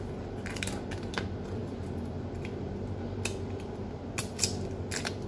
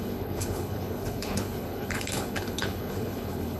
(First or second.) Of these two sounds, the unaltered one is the first